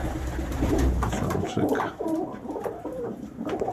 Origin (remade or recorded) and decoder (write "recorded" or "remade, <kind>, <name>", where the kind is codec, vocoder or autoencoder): remade, vocoder, BigVGAN v2